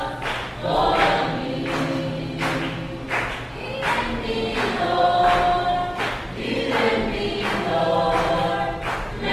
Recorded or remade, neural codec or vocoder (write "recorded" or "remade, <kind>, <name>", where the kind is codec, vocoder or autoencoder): recorded